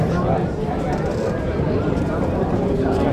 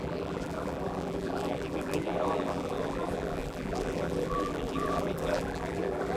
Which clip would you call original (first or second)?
first